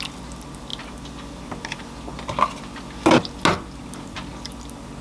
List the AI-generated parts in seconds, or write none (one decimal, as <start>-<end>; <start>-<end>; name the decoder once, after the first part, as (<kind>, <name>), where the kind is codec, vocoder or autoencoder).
none